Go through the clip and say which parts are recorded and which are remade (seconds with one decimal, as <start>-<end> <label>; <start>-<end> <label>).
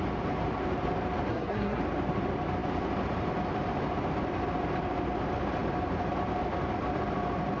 0.0-1.3 recorded; 1.3-1.8 remade; 1.8-7.6 recorded